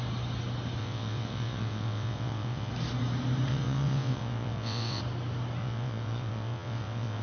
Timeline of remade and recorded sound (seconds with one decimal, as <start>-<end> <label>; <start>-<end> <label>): 0.0-0.8 recorded; 0.8-2.7 remade; 2.7-3.5 recorded; 3.5-5.0 remade; 5.0-5.6 recorded; 5.6-7.2 remade